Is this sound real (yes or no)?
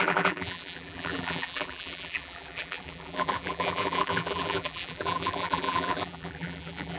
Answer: no